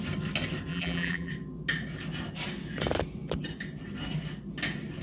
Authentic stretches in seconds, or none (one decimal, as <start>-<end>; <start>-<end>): 0.0-0.7; 1.3-5.0